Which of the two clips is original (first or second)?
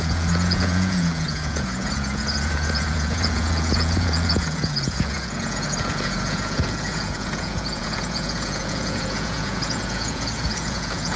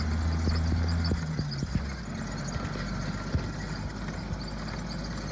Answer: second